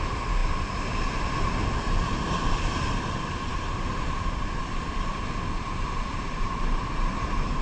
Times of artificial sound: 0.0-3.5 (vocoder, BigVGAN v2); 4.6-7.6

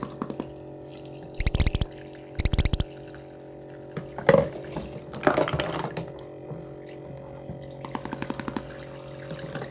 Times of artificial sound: none

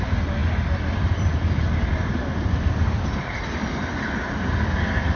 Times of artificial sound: none